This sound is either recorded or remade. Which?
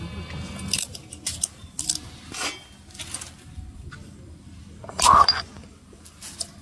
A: recorded